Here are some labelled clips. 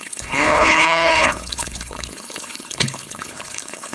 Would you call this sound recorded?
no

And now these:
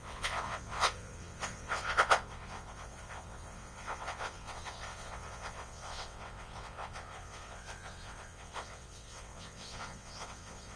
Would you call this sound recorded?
no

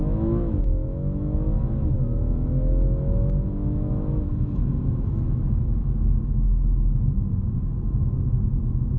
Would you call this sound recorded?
no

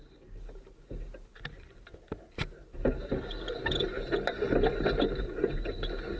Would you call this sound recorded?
yes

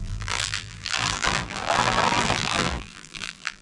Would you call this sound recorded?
no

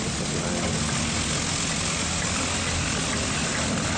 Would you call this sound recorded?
yes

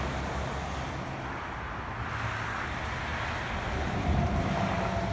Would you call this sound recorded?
yes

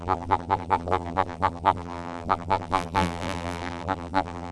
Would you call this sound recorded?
no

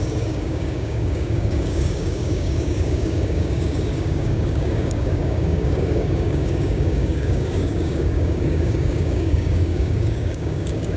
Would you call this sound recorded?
no